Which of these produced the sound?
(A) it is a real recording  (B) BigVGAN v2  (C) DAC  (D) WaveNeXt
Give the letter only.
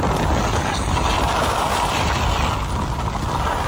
A